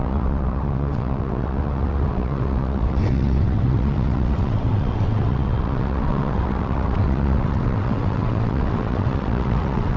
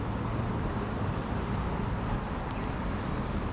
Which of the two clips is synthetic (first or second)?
first